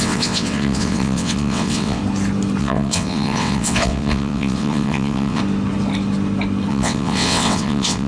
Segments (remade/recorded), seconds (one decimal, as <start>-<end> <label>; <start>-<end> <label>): 0.0-2.0 remade; 2.0-2.6 recorded; 2.6-5.4 remade; 5.4-6.7 recorded; 6.7-8.1 remade